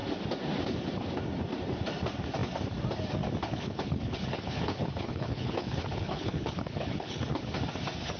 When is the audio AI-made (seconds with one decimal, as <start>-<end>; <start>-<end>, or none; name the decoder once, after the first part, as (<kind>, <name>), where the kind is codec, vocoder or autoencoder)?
3.5-7.4 (codec, HILCodec)